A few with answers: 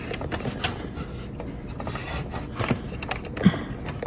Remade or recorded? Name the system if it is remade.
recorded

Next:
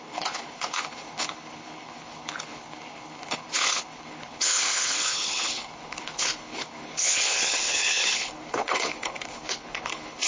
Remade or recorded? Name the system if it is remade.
remade, codec, HILCodec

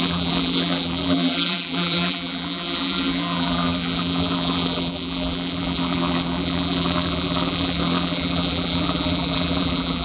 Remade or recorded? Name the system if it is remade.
remade, vocoder, BigVGAN v2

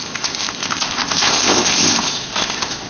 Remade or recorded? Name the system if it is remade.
remade, codec, ZipCodec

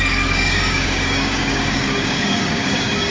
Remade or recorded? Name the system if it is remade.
remade, codec, DAC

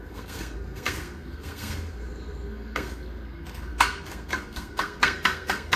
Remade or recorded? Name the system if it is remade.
remade, codec, SNAC